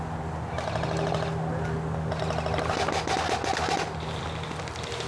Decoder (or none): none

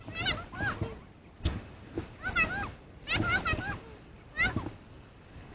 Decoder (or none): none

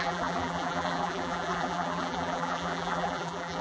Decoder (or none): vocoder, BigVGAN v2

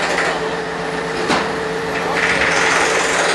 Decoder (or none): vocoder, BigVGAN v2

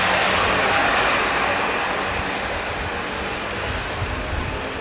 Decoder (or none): none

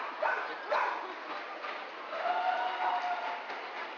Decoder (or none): none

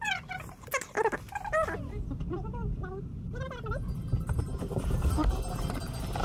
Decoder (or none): none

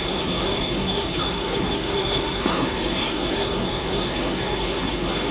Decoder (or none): codec, SNAC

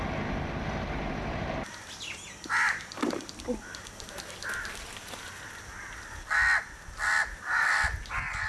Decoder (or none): none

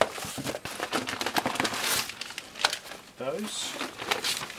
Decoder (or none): none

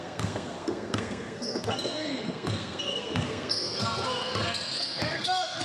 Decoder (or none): codec, SNAC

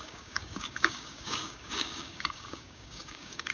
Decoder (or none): codec, DAC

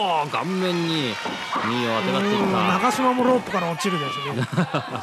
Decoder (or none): none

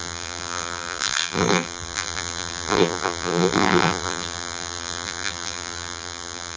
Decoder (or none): vocoder, BigVGAN v2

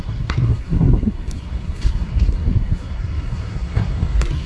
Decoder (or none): codec, SNAC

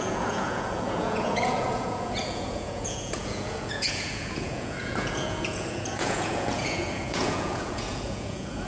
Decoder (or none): vocoder, Vocos